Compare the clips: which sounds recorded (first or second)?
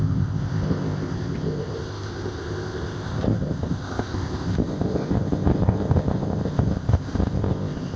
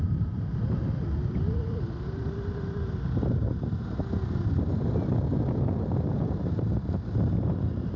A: second